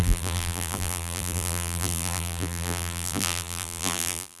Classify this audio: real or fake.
fake